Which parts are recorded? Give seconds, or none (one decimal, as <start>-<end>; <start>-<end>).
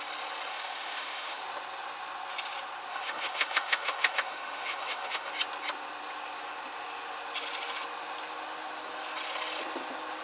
0.0-0.5; 1.4-2.9; 5.3-10.2